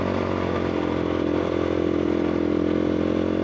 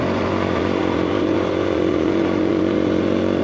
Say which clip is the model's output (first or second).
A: second